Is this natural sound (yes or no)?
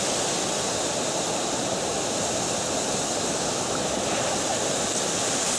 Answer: yes